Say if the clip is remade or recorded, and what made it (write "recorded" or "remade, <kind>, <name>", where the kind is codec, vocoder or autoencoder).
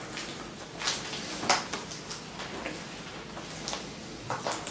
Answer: recorded